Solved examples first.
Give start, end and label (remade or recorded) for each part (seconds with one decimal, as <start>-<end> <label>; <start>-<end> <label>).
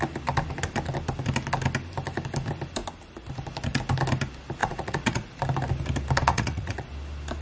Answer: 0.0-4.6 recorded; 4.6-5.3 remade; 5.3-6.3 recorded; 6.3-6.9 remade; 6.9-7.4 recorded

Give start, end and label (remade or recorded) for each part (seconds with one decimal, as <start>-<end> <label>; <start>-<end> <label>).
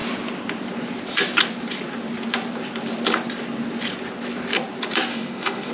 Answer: 0.0-5.1 recorded; 5.1-5.7 remade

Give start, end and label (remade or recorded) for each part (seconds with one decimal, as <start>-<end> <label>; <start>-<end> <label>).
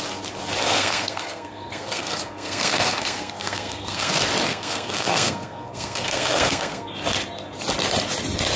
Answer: 0.0-0.6 recorded; 0.6-4.1 remade; 4.1-4.5 recorded; 4.5-6.9 remade; 6.9-8.6 recorded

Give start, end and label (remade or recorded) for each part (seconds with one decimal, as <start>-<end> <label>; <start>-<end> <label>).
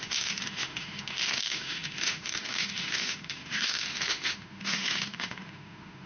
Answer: 0.0-6.1 remade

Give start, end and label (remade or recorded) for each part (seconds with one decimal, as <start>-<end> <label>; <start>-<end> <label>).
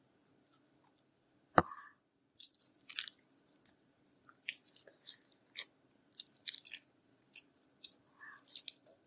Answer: 0.0-9.1 recorded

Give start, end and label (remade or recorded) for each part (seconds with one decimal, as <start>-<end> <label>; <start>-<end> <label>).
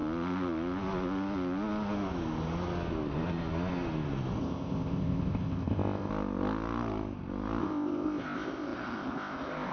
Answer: 0.0-4.4 recorded; 4.4-6.1 remade; 6.1-7.6 recorded; 7.6-9.7 remade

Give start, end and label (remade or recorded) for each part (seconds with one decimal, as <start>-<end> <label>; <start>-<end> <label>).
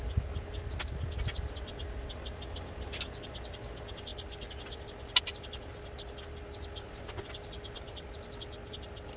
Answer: 0.0-9.2 recorded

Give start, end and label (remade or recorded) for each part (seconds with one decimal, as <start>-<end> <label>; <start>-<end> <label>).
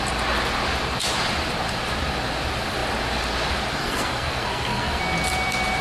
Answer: 0.0-3.8 recorded; 3.8-5.0 remade; 5.0-5.8 recorded